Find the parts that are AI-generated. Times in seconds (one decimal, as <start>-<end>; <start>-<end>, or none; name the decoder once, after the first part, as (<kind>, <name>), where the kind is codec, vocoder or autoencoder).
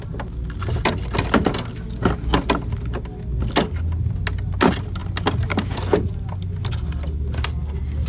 none